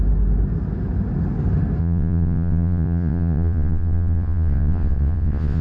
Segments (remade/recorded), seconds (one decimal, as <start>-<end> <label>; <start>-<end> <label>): 0.0-1.8 recorded; 1.8-5.6 remade